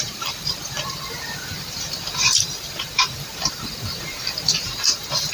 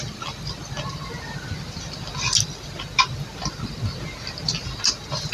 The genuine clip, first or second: second